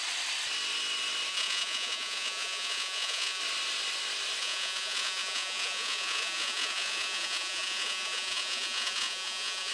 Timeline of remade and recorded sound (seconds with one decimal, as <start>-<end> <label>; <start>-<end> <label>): 0.0-1.3 recorded; 1.3-3.4 remade; 3.4-4.4 recorded; 4.4-9.7 remade